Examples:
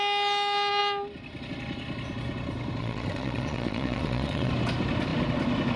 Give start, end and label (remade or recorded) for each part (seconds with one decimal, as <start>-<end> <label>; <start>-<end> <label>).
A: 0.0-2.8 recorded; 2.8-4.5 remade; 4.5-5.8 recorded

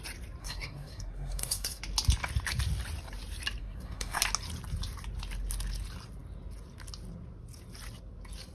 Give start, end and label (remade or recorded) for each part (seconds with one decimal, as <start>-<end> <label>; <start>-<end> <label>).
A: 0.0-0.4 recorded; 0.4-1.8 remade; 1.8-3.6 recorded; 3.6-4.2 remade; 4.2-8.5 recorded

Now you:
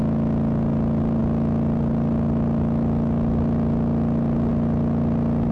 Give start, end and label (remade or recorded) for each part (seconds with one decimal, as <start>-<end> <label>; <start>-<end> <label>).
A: 0.0-5.5 recorded

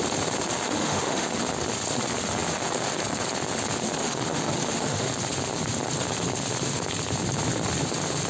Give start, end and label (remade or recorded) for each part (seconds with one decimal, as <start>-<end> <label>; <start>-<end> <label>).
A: 0.0-0.8 recorded; 0.8-1.3 remade; 1.3-4.0 recorded; 4.0-5.1 remade; 5.1-8.3 recorded

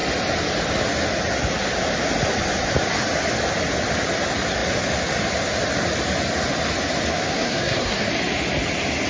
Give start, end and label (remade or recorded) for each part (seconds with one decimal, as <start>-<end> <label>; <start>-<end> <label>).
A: 0.0-7.1 recorded; 7.1-8.1 remade; 8.1-9.1 recorded

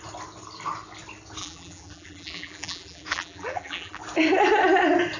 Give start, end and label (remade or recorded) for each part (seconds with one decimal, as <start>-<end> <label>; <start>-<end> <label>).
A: 0.0-1.4 recorded; 1.4-4.0 remade; 4.0-5.2 recorded